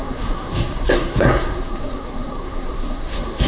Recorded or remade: remade